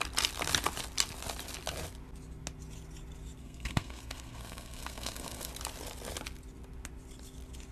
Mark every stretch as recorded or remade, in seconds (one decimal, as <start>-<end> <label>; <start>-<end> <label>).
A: 0.0-3.4 recorded; 3.4-5.5 remade; 5.5-7.7 recorded